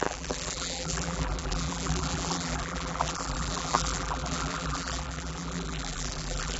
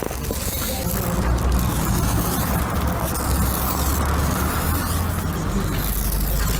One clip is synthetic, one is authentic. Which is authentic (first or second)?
second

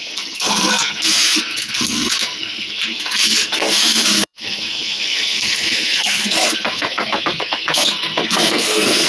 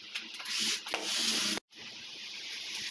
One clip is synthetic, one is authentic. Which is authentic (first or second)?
second